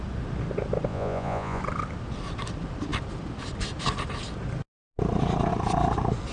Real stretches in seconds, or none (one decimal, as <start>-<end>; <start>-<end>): 0.0-0.9; 1.6-6.3